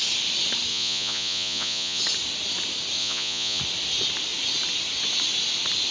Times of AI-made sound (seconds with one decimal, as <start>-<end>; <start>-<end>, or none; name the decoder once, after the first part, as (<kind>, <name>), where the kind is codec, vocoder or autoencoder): 0.7-2.0 (vocoder, Vocos); 3.0-3.6